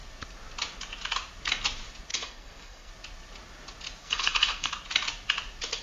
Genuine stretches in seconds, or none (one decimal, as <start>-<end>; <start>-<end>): 0.0-2.1; 2.9-4.0; 4.7-5.8